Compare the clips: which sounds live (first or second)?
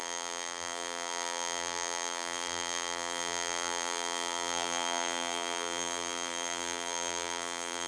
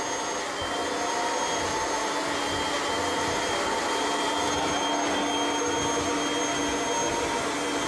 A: second